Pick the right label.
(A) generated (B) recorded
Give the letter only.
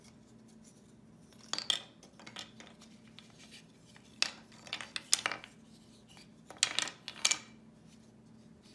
B